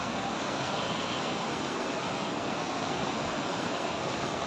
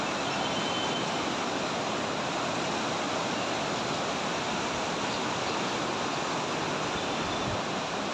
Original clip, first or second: second